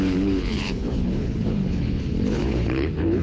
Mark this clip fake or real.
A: fake